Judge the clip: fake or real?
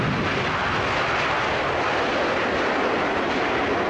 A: real